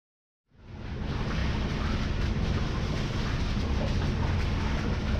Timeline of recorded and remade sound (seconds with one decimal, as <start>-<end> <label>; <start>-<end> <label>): 0.0-5.2 recorded